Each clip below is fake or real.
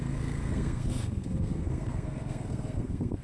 fake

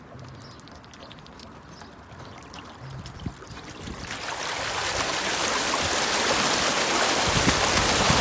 real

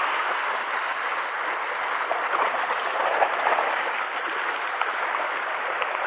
real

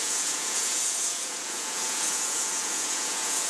fake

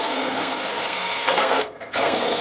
fake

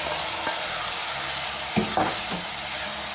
real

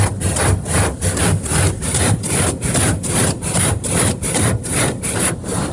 real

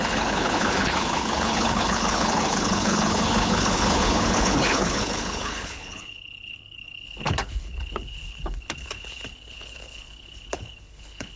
fake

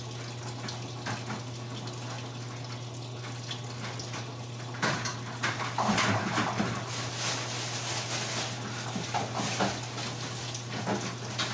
real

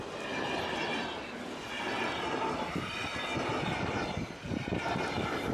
real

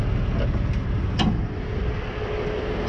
real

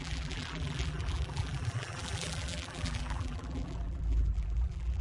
fake